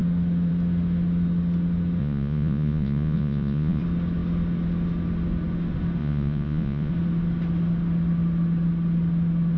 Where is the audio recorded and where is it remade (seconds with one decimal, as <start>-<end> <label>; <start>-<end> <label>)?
0.0-2.0 recorded; 2.0-3.8 remade; 3.8-6.0 recorded; 6.0-6.9 remade; 6.9-9.6 recorded